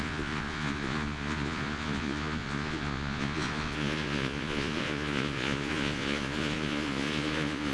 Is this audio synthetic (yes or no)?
yes